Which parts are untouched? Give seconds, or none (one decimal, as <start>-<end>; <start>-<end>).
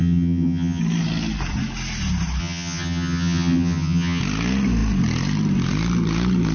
0.8-2.4; 4.2-6.5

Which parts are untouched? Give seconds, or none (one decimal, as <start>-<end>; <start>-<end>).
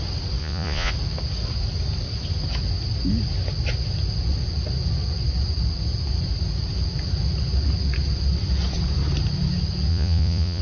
0.0-0.4; 0.9-9.9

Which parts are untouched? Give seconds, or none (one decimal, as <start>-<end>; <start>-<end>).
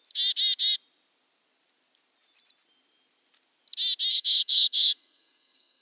0.0-4.1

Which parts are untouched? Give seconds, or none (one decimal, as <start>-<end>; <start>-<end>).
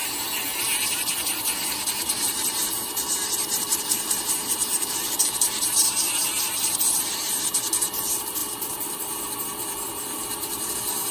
none